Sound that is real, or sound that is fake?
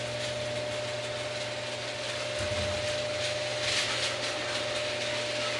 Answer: real